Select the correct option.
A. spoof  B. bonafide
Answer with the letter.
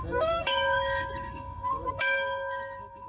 A